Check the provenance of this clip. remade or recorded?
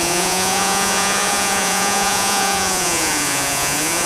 remade